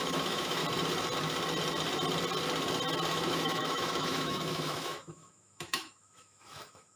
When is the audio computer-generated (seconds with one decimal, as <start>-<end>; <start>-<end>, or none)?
0.0-0.6; 3.3-7.0